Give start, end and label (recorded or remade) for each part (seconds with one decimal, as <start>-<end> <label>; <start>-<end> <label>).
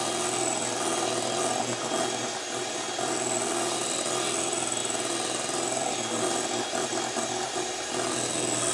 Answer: 0.0-8.7 recorded